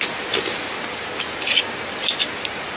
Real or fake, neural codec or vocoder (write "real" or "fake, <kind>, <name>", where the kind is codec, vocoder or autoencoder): real